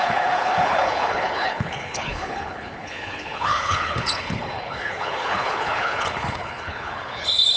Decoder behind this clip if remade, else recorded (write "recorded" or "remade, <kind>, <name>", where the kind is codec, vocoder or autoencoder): remade, codec, HILCodec